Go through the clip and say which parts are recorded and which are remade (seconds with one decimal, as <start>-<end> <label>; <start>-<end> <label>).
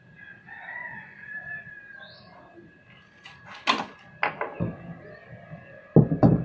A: 0.0-0.8 recorded; 0.8-1.7 remade; 1.7-6.4 recorded